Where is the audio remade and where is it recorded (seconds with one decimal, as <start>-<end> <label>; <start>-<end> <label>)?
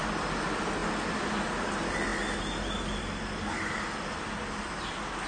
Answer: 0.0-5.3 recorded